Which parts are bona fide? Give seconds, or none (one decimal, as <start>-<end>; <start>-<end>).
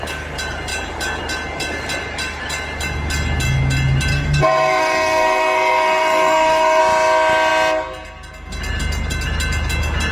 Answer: 0.0-4.1; 6.8-10.1